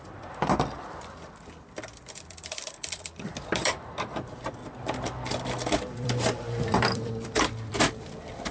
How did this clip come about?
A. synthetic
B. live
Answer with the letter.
A